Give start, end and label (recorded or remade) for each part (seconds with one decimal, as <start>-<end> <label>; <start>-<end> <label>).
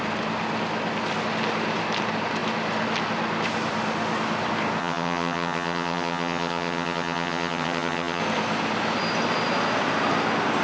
0.0-4.8 recorded; 4.8-8.2 remade; 8.2-10.6 recorded